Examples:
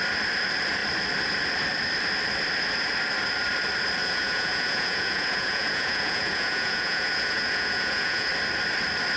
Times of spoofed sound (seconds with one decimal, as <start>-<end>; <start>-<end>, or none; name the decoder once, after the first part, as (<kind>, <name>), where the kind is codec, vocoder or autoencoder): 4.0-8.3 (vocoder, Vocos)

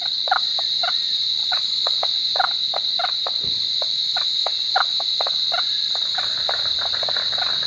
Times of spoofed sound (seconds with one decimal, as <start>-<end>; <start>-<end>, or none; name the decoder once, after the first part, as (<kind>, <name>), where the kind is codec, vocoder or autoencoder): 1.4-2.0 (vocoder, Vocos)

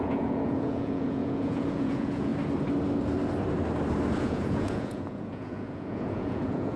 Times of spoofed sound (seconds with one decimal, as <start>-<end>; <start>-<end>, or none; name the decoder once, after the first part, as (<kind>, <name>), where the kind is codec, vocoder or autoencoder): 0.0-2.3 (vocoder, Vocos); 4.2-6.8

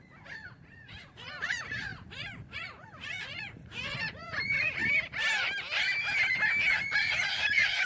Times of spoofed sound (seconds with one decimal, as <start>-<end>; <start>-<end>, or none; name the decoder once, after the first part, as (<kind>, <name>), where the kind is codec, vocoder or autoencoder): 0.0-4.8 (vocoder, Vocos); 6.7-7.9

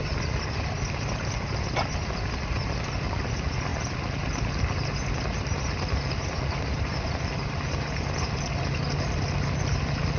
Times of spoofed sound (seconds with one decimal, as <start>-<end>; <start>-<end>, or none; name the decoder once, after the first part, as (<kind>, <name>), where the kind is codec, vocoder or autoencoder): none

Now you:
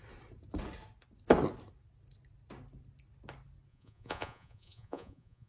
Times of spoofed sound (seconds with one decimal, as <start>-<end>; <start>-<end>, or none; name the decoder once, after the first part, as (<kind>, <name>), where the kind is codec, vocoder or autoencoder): 3.7-5.5 (vocoder, Vocos)